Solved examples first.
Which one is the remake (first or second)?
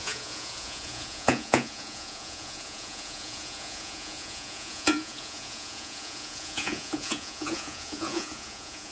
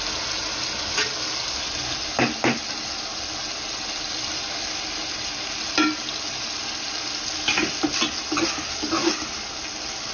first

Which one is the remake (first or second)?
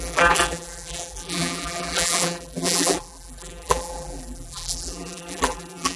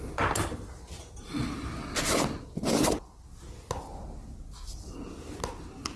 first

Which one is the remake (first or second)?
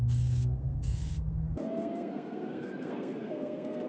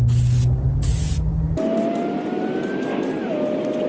first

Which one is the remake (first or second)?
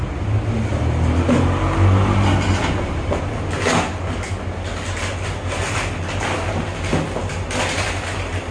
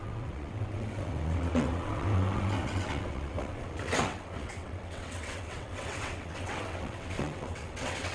second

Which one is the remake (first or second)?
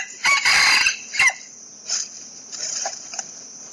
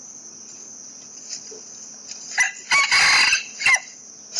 first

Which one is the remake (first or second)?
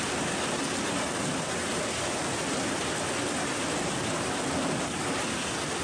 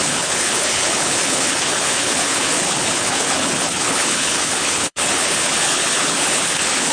second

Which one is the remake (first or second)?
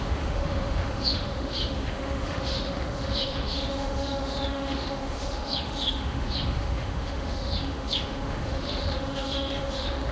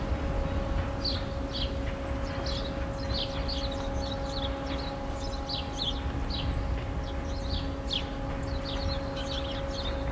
first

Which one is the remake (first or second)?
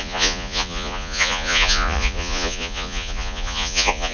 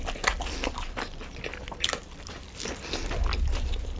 first